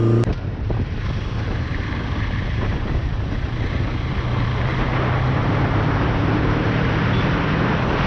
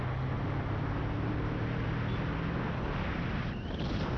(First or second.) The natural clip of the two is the second